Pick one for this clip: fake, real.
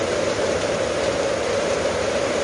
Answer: real